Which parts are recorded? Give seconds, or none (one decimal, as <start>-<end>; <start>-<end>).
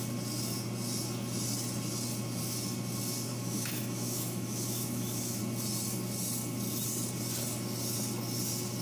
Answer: 0.0-3.3; 5.4-8.8